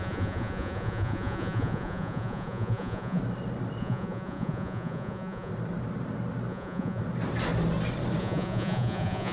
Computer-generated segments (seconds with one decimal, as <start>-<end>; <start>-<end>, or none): 0.0-3.2; 3.8-5.5; 6.5-7.0; 8.2-9.3